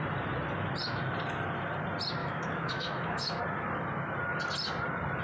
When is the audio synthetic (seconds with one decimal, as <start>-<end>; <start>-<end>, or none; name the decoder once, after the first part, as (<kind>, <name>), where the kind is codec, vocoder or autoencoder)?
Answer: 2.2-3.4 (autoencoder, DAC-VAE)